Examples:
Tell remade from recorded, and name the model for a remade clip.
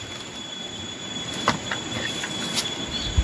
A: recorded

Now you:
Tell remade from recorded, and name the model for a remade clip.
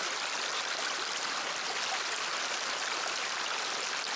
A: recorded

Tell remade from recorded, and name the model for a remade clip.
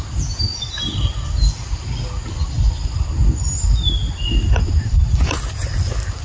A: recorded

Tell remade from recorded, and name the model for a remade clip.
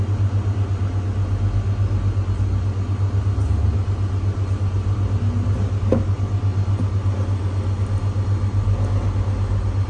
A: recorded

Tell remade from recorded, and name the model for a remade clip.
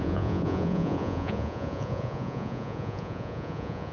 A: remade, vocoder, Vocos